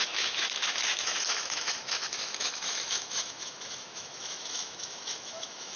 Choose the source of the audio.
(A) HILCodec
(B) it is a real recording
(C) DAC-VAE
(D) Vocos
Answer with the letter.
C